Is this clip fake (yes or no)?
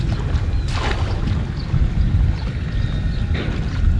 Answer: no